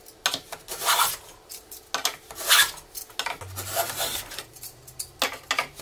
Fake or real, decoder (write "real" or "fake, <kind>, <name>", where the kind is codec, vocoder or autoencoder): real